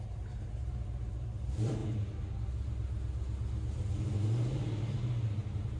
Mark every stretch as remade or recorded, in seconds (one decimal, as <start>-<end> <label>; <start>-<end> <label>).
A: 0.0-1.8 remade; 1.8-4.0 recorded; 4.0-5.8 remade